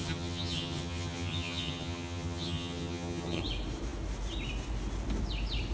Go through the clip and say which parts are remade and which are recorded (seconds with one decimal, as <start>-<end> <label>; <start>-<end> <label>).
0.0-3.4 remade; 3.4-5.7 recorded